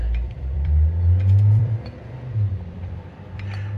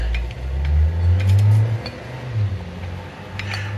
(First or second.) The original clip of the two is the second